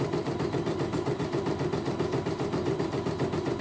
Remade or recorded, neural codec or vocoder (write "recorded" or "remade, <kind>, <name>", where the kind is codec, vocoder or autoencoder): remade, vocoder, BigVGAN v2